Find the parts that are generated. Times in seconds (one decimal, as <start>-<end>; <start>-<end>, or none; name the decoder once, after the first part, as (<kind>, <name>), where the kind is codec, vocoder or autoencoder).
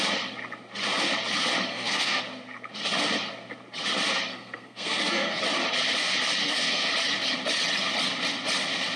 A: 1.7-2.2 (codec, SNAC); 4.3-5.4; 6.4-6.9